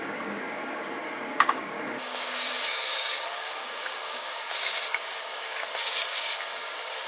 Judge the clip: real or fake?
fake